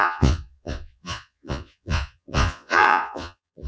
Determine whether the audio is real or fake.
fake